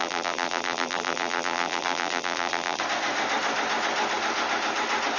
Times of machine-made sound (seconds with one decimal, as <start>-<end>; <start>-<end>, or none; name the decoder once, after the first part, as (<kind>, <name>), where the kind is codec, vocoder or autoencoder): 0.0-2.8 (vocoder, BigVGAN v2)